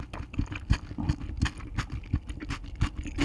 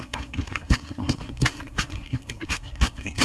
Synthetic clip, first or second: second